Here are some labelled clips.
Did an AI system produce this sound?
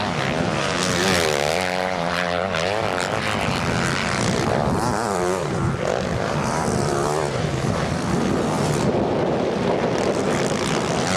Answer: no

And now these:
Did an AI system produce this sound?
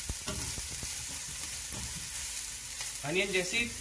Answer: no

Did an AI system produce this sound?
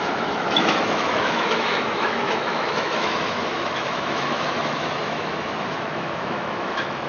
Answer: yes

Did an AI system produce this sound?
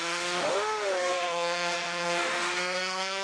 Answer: yes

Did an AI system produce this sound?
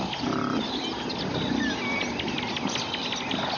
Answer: no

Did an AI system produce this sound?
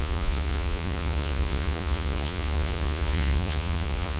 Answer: yes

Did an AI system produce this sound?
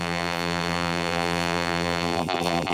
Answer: yes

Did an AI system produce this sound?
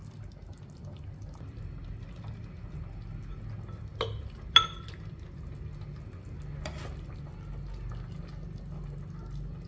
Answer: no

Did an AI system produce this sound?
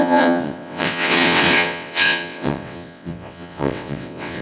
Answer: yes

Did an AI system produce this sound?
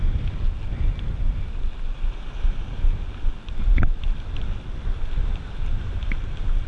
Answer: no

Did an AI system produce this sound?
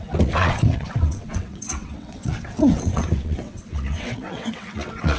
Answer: yes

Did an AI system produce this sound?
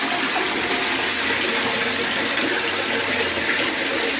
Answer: no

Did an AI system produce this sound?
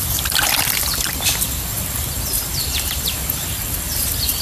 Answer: yes